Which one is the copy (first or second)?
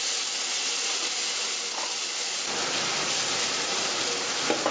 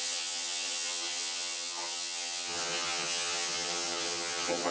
second